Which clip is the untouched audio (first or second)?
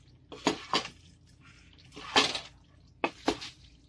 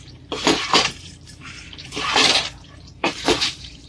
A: first